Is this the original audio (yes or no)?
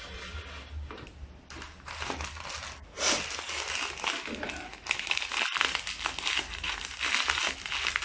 yes